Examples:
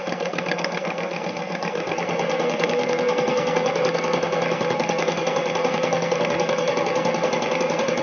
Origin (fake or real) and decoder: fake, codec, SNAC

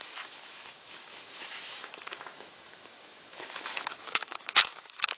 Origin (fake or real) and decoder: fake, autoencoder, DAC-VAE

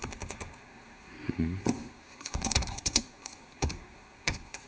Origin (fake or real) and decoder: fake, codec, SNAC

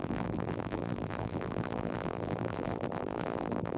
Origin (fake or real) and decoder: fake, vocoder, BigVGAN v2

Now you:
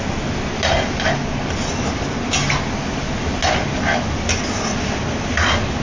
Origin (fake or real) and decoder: real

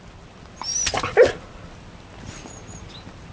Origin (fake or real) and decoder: real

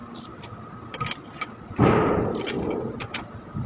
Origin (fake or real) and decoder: real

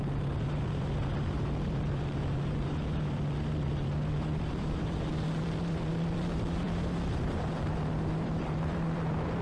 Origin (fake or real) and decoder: fake, vocoder, BigVGAN v2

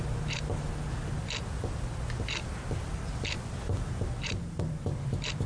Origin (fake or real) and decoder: real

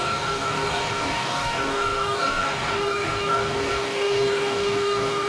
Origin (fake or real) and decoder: fake, codec, DAC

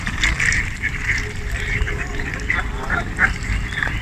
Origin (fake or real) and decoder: fake, vocoder, BigVGAN v2